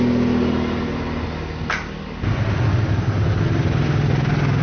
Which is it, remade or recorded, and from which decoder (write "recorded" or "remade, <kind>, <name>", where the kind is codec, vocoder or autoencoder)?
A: recorded